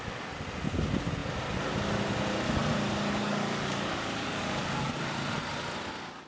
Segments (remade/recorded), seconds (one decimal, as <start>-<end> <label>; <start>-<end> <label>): 0.0-3.2 recorded; 3.2-4.9 remade; 4.9-6.3 recorded